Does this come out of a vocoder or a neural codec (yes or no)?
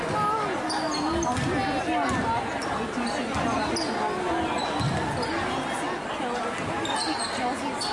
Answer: no